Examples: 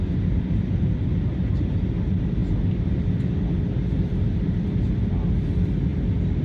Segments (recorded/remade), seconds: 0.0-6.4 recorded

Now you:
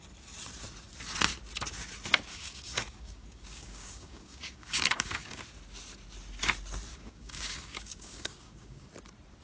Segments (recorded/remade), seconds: 0.0-2.3 recorded; 2.3-5.4 remade; 5.4-6.9 recorded; 6.9-8.9 remade; 8.9-9.4 recorded

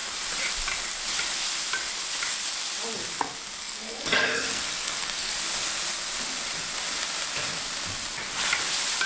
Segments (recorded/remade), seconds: 0.0-3.6 recorded; 3.6-5.3 remade; 5.3-9.1 recorded

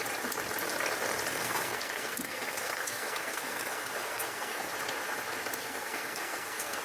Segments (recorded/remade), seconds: 0.0-1.3 recorded; 1.3-4.7 remade; 4.7-5.6 recorded; 5.6-6.8 remade

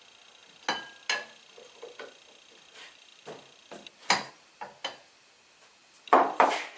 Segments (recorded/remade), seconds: 0.0-5.8 recorded; 5.8-6.8 remade

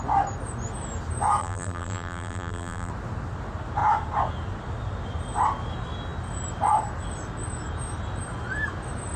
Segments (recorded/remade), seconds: 0.0-1.4 recorded; 1.4-2.9 remade; 2.9-9.2 recorded

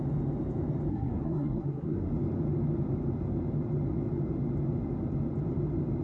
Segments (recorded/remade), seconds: 0.0-0.9 recorded; 0.9-2.1 remade; 2.1-6.0 recorded